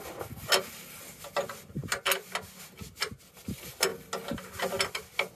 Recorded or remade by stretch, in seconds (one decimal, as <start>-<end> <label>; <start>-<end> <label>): 0.0-5.4 recorded